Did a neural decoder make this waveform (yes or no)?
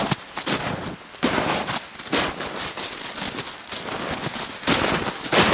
no